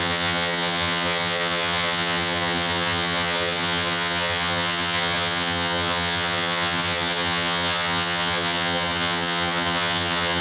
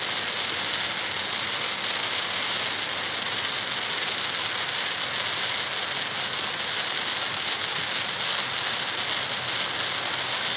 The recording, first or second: second